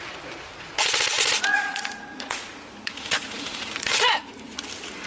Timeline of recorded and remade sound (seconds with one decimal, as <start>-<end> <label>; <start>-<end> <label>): 0.0-1.5 recorded; 1.5-4.6 remade; 4.6-5.1 recorded